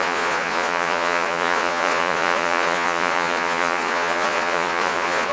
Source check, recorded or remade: remade